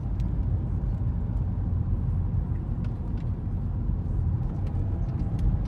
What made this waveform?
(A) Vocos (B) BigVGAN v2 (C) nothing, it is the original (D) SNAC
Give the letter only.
C